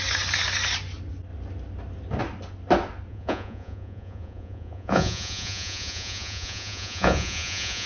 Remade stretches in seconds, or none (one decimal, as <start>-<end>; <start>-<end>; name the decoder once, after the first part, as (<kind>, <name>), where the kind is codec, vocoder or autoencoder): 3.1-7.9 (vocoder, Vocos)